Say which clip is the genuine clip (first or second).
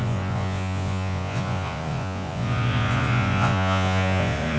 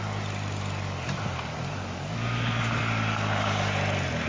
second